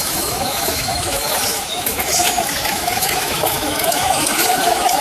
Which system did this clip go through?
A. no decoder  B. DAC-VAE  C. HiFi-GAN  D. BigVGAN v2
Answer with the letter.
B